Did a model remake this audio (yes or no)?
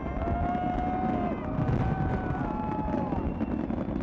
no